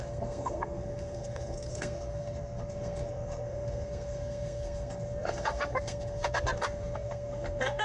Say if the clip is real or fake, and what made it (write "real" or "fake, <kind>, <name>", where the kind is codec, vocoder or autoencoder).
fake, codec, SNAC